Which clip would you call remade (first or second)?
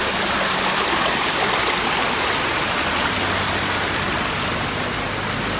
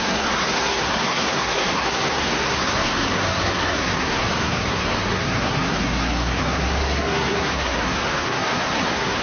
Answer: second